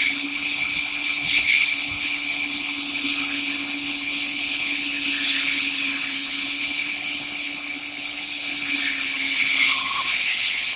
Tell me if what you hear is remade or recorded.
remade